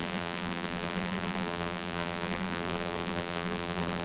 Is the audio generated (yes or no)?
yes